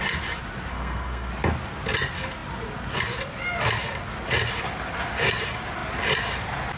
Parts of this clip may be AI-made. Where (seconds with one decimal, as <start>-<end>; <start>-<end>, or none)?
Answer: 0.7-1.3